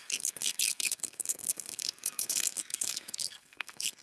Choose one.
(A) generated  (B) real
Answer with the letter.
A